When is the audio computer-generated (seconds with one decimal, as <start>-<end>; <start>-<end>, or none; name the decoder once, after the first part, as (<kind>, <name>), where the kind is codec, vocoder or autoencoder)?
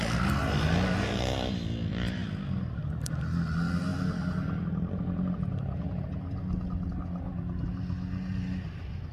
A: none